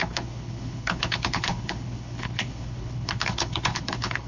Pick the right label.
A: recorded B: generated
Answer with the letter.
B